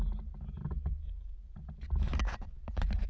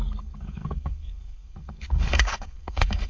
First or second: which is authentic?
first